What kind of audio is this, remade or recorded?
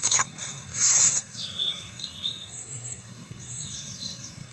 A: remade